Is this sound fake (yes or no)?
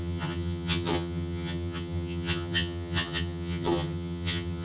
yes